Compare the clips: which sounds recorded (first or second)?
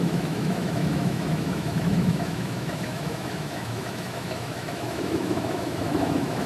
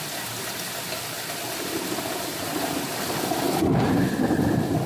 second